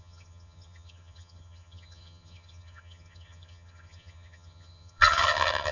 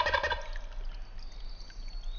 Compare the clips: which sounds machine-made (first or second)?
first